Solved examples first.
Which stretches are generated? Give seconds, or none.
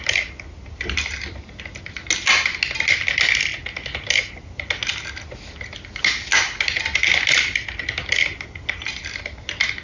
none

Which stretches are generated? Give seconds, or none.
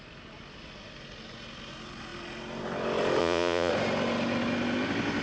3.2-3.7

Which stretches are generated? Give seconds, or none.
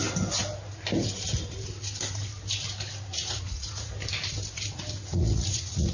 3.1-3.9; 5.1-5.9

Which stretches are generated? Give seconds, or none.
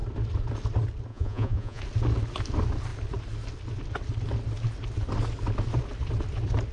1.1-1.8